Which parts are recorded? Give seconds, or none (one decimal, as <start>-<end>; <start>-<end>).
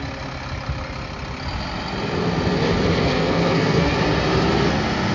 0.0-2.9; 3.9-5.1